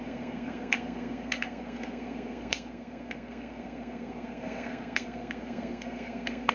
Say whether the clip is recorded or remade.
remade